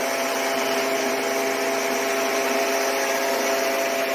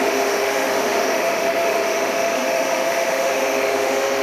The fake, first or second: second